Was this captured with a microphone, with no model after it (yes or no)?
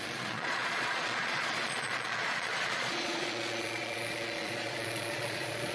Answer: no